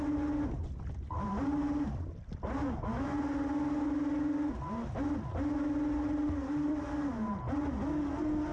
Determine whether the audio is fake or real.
real